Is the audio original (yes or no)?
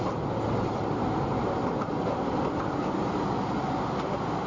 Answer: yes